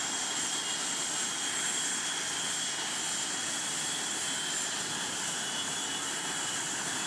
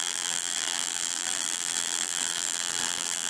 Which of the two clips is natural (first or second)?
first